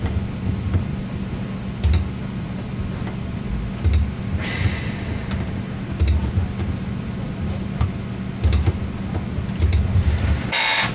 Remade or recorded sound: recorded